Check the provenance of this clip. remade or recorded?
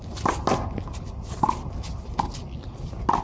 recorded